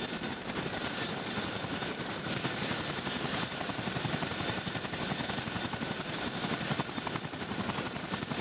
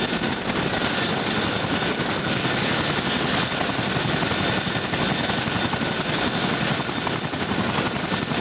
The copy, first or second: first